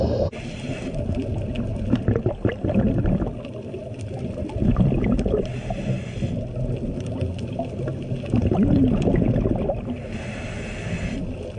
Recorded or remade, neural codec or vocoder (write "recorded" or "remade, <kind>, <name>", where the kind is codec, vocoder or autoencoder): recorded